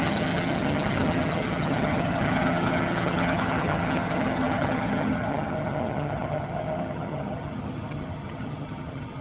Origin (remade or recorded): remade